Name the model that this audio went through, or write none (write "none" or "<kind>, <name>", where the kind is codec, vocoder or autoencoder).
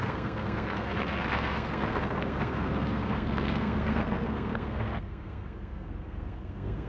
codec, SNAC